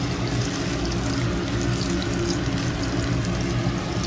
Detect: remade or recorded recorded